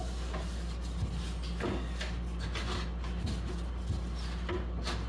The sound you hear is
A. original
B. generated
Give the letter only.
A